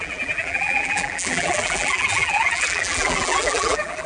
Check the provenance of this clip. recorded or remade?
remade